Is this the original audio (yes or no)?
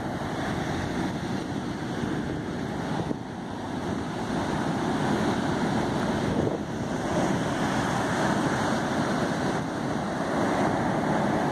yes